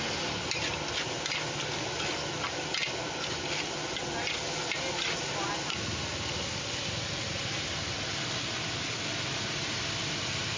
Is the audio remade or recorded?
recorded